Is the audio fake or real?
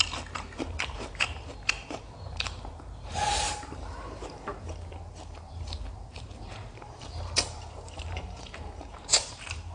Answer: fake